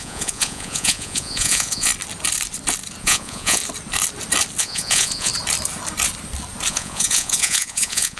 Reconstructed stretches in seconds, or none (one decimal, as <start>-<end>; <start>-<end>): 0.0-1.9; 3.0-3.6; 4.6-5.3; 6.7-8.2

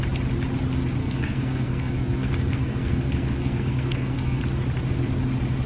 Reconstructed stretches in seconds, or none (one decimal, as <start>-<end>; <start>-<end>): 1.0-4.4

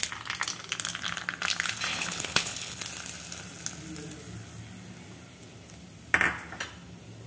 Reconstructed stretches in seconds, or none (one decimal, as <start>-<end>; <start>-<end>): 1.9-2.8

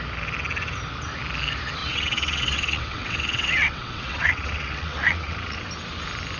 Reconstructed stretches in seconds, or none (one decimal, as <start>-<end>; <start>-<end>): 1.8-5.6